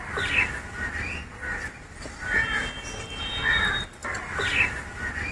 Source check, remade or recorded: recorded